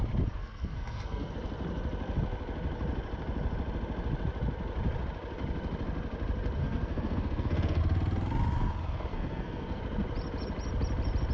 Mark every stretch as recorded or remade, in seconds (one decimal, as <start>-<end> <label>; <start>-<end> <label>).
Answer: 0.0-0.4 recorded; 0.4-1.3 remade; 1.3-6.6 recorded; 6.6-7.8 remade; 7.8-9.1 recorded; 9.1-9.8 remade; 9.8-11.3 recorded